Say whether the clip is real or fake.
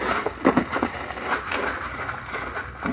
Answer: real